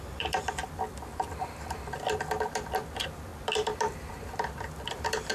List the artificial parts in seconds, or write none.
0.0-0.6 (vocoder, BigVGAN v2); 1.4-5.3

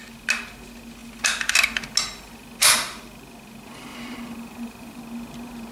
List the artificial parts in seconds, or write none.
1.0-1.5 (vocoder, BigVGAN v2); 3.9-5.0

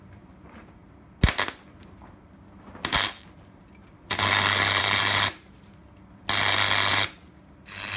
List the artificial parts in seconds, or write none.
0.0-0.8 (vocoder, BigVGAN v2); 4.8-5.8; 6.9-8.0

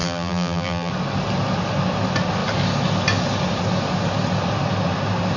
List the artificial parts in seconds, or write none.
0.0-0.9 (vocoder, BigVGAN v2)

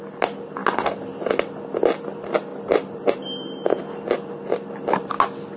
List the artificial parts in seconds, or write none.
0.6-1.3 (vocoder, BigVGAN v2); 2.5-3.8